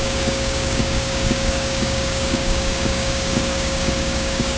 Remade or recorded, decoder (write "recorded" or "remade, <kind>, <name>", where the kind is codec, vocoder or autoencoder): remade, codec, DAC